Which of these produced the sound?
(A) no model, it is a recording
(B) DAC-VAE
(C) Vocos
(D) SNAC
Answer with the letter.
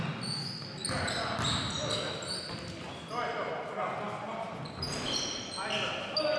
A